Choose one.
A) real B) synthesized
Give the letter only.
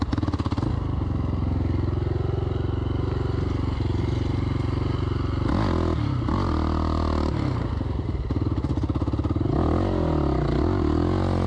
A